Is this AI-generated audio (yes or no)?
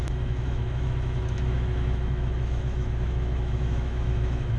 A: yes